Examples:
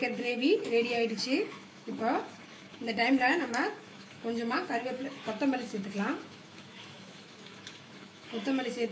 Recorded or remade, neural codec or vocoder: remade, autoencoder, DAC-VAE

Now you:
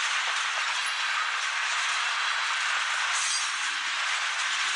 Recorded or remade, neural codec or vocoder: recorded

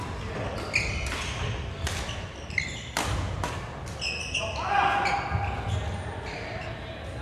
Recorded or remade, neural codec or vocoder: recorded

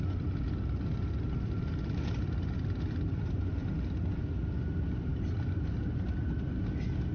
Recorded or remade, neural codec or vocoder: recorded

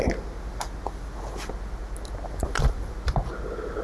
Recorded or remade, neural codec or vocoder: recorded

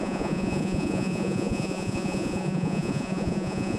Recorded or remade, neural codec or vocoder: remade, vocoder, Vocos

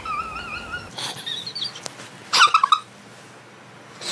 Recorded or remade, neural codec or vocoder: recorded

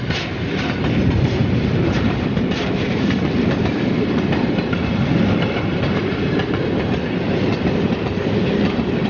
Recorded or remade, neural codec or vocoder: remade, vocoder, BigVGAN v2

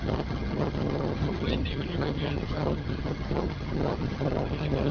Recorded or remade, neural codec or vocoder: remade, vocoder, HiFi-GAN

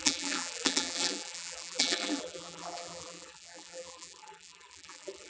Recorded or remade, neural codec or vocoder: remade, vocoder, BigVGAN v2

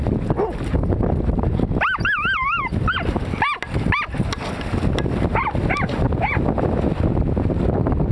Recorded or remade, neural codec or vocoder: recorded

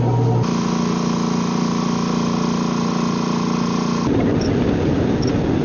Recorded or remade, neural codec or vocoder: recorded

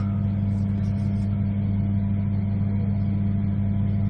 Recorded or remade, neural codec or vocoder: recorded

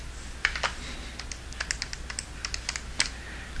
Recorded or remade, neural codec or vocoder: recorded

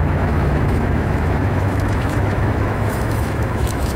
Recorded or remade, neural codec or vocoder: remade, autoencoder, DAC-VAE